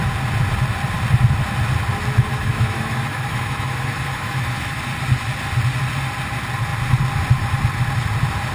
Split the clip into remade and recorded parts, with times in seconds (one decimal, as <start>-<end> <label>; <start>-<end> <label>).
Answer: 0.0-2.3 recorded; 2.3-4.8 remade; 4.8-8.5 recorded